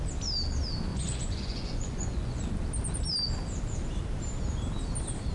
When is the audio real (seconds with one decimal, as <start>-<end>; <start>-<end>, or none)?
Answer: 0.0-0.9; 2.4-5.3

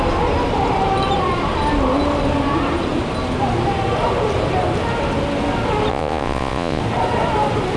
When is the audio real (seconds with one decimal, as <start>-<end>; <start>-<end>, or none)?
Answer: 0.0-5.9; 6.8-7.8

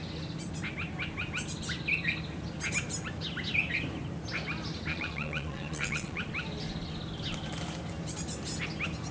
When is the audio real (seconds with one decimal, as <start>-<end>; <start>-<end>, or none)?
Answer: 0.0-4.9; 6.2-9.1

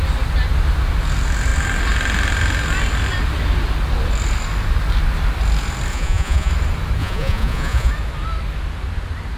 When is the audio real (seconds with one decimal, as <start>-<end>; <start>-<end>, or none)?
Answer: 0.0-5.9; 6.5-7.0; 7.9-9.4

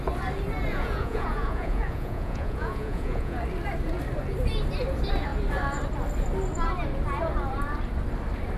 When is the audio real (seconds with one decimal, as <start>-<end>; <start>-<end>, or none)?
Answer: 0.0-0.7; 3.4-8.6